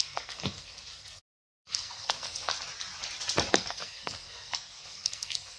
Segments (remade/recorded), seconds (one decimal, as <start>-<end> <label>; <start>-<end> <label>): 0.0-2.5 remade; 2.5-3.5 recorded; 3.5-5.6 remade